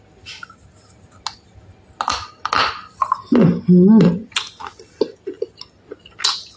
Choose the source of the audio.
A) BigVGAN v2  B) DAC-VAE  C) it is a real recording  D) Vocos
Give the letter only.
C